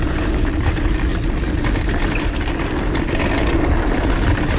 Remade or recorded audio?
recorded